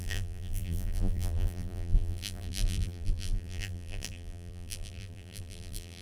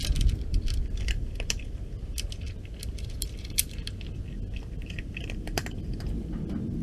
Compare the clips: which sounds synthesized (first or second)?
first